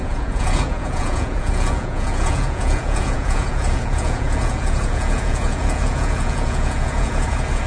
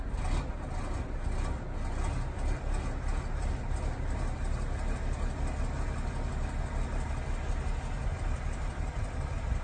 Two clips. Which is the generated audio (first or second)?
first